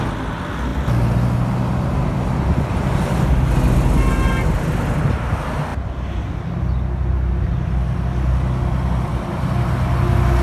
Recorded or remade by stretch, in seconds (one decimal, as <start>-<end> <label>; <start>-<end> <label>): 0.0-10.4 recorded